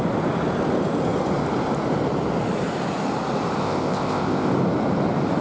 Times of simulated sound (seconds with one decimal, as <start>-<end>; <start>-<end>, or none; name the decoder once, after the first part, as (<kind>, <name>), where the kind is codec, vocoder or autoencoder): 3.6-4.5 (codec, ZipCodec)